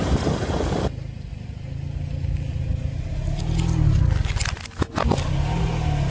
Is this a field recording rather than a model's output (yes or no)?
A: yes